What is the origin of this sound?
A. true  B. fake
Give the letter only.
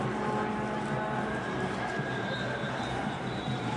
A